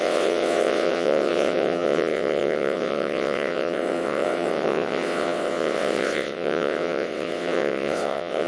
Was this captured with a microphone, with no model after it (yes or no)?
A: no